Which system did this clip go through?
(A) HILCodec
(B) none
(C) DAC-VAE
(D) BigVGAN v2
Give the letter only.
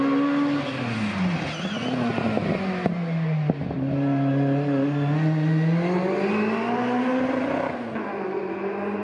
B